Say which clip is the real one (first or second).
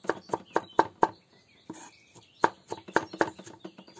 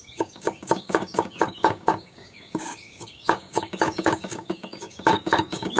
first